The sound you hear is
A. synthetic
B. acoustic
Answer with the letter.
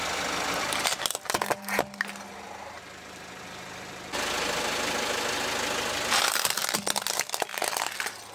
B